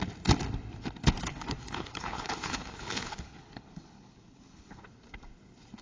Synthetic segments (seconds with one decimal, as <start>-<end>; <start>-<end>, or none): 1.3-4.8